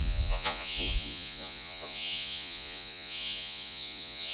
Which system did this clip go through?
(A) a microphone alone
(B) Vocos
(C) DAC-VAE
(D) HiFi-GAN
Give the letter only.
B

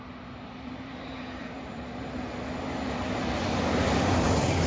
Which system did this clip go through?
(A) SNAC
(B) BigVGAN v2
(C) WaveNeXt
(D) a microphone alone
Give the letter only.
D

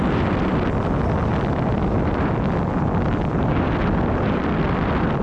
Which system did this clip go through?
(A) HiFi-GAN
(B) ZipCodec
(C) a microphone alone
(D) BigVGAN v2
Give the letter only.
D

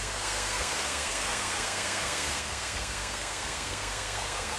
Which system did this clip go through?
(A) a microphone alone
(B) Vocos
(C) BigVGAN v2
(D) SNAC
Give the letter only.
D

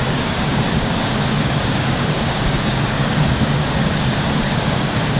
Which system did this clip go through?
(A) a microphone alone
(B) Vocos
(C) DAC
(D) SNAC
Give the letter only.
C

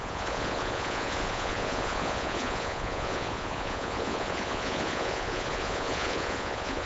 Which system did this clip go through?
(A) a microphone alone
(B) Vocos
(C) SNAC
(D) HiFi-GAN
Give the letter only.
B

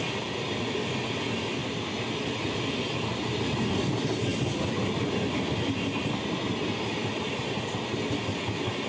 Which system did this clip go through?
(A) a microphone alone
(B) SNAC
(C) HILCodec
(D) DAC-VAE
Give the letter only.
A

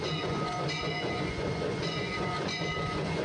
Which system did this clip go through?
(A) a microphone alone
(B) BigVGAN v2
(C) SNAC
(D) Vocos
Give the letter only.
D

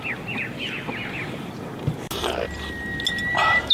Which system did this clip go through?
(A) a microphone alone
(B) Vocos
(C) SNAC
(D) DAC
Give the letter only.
A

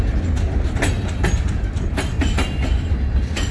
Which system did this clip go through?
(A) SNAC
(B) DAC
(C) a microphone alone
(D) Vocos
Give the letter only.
C